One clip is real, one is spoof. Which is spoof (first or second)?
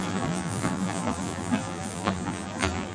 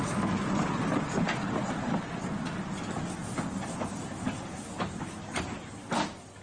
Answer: first